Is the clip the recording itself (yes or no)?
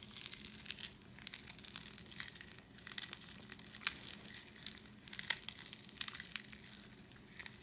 yes